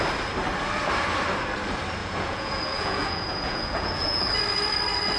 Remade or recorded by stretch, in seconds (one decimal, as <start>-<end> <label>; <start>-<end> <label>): 0.0-2.0 recorded; 2.0-4.3 remade; 4.3-5.2 recorded